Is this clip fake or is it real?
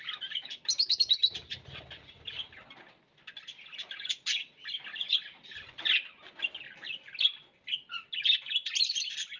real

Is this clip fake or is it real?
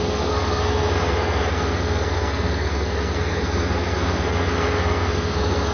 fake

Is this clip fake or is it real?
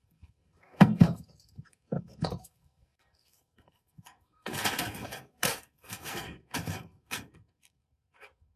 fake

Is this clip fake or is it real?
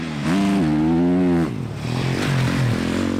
real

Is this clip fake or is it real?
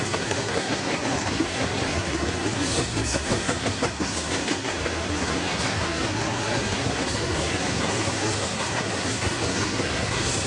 fake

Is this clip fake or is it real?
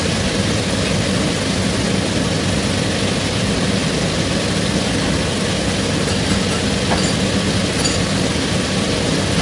real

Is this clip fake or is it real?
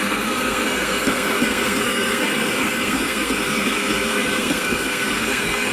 fake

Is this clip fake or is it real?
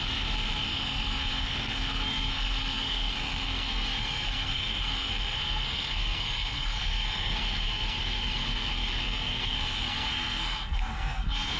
fake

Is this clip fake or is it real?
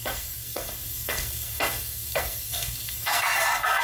fake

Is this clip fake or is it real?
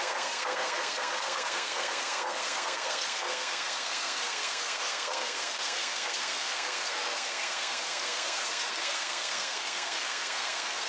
fake